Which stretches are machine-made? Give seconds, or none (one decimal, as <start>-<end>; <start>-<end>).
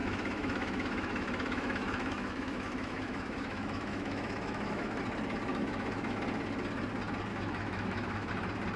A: 0.0-5.0; 5.5-6.2; 7.3-8.3